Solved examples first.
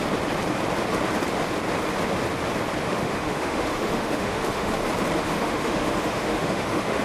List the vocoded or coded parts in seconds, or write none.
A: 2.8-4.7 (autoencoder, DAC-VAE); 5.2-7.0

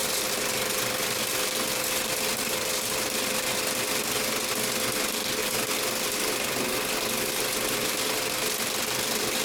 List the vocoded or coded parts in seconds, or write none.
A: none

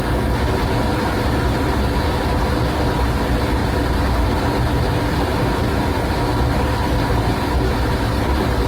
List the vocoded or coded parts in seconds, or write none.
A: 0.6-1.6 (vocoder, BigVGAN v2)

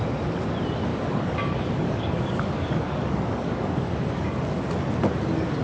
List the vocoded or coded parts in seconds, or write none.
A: 0.9-4.3 (codec, DAC)